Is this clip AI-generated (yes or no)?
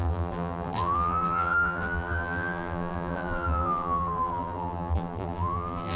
yes